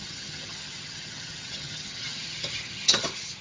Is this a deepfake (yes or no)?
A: yes